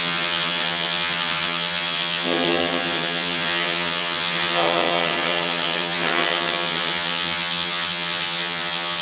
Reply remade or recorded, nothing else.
remade